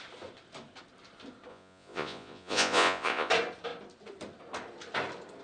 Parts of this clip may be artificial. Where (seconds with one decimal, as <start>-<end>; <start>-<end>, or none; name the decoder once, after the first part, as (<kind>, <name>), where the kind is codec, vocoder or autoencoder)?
1.5-3.3 (vocoder, Vocos)